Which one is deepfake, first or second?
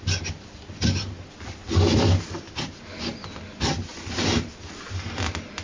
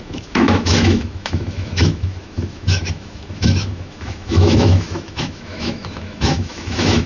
second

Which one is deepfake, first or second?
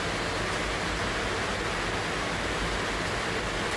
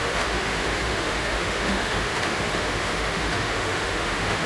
second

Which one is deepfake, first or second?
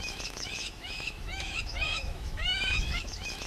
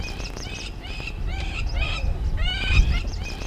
first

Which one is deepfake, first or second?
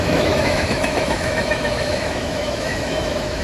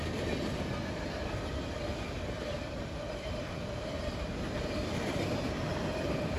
first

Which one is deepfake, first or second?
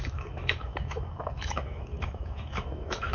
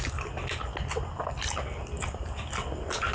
first